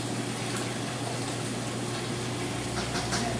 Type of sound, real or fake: real